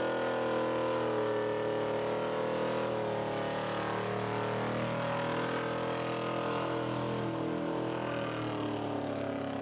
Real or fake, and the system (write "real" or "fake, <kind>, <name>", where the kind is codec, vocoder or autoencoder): real